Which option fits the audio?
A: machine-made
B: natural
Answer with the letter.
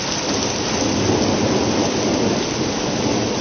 B